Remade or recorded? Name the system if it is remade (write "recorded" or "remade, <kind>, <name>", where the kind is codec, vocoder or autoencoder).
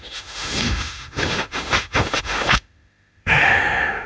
remade, autoencoder, DAC-VAE